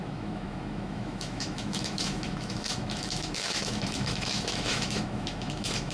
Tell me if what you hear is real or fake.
fake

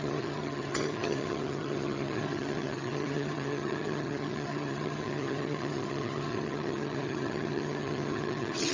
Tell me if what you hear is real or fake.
fake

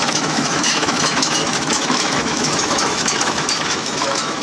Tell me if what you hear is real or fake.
fake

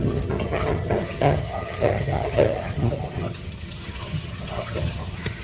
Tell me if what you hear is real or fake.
fake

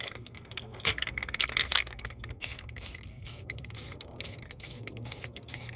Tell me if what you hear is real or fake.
fake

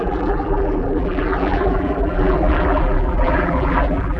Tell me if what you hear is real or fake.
fake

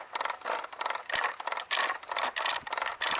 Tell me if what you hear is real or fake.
real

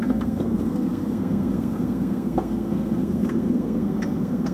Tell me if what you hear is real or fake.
fake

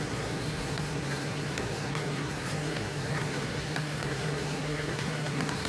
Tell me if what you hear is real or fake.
fake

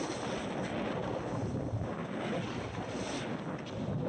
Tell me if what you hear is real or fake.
real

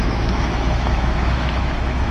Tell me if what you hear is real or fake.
fake